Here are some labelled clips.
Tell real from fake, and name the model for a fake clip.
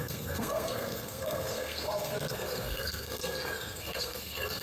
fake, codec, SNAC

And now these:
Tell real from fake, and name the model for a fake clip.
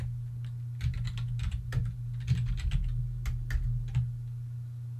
real